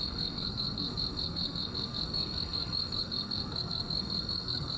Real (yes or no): no